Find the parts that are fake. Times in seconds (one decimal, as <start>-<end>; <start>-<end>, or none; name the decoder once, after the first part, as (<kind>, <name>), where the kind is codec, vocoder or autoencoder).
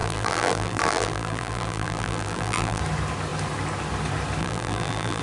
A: 0.0-2.8 (vocoder, BigVGAN v2); 4.4-5.2